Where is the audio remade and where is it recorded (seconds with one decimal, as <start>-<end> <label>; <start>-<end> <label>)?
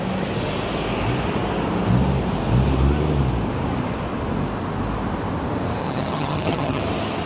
0.0-5.8 recorded; 5.8-6.8 remade; 6.8-7.3 recorded